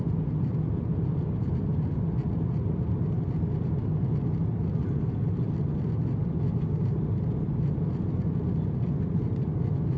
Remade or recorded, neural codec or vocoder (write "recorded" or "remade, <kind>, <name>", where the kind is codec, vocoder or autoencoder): recorded